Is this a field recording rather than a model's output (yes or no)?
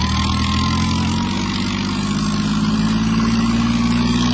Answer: yes